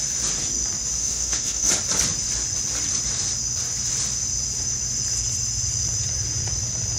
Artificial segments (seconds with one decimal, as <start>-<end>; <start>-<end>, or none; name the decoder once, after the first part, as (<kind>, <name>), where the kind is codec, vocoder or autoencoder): 1.0-1.7 (autoencoder, DAC-VAE)